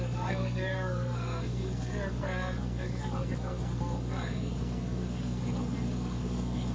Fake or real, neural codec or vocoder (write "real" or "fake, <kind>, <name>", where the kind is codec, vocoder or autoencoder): fake, codec, SNAC